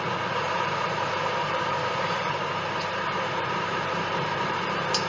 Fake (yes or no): yes